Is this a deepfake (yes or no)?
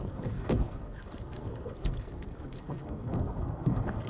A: yes